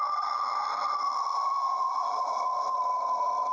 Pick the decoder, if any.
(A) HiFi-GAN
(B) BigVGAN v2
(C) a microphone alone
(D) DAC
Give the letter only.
C